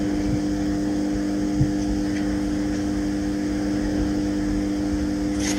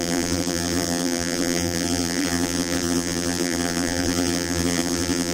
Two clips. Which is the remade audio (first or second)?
second